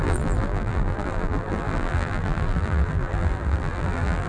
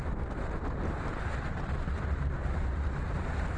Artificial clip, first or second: first